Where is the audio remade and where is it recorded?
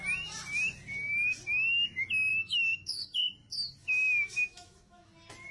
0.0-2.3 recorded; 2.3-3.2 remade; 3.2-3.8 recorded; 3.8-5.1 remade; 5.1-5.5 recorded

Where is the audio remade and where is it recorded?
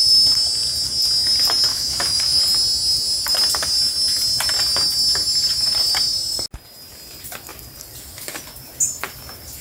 0.0-1.7 recorded; 1.7-2.4 remade; 2.4-9.6 recorded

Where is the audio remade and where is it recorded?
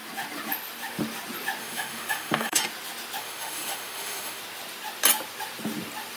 0.0-1.6 recorded; 1.6-2.6 remade; 2.6-3.2 recorded; 3.2-4.4 remade; 4.4-6.2 recorded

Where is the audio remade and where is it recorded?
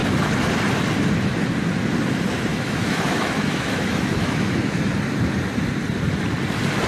0.0-2.5 recorded; 2.5-4.8 remade; 4.8-6.9 recorded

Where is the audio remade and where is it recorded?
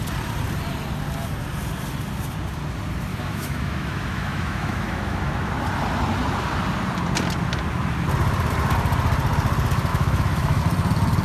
0.0-3.1 recorded; 3.1-5.5 remade; 5.5-9.9 recorded; 9.9-10.6 remade; 10.6-11.2 recorded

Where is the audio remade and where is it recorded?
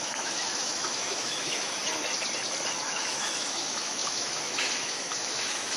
0.0-1.8 remade; 1.8-2.8 recorded; 2.8-5.8 remade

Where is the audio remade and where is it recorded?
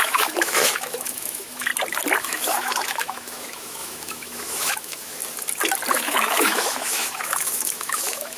0.0-1.7 remade; 1.7-2.2 recorded; 2.2-5.2 remade; 5.2-5.9 recorded; 5.9-8.4 remade